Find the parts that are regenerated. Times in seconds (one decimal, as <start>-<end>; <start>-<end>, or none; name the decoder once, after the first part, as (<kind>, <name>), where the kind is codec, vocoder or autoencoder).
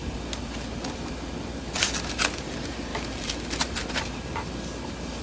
none